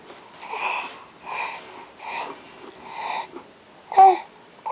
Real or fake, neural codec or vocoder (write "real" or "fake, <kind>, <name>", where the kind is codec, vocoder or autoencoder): real